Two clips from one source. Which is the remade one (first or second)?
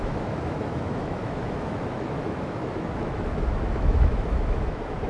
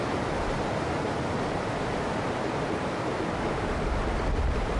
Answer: first